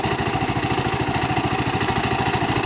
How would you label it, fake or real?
real